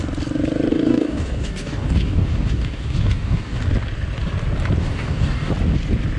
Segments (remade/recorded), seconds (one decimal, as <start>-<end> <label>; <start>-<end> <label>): 0.0-0.7 recorded; 0.7-3.6 remade; 3.6-4.8 recorded; 4.8-5.5 remade; 5.5-6.2 recorded